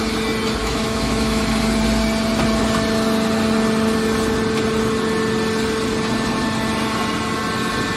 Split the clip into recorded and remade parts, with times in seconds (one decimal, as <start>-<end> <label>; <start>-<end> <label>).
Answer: 0.0-0.6 recorded; 0.6-1.4 remade; 1.4-8.0 recorded